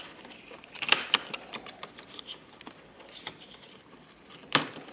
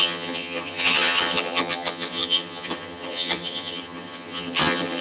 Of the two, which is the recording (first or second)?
first